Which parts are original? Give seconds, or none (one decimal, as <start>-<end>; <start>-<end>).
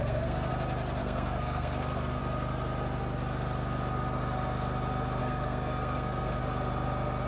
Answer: 0.5-1.0; 2.2-5.2; 6.4-7.3